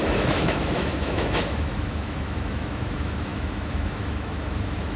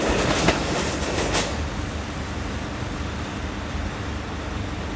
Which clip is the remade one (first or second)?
first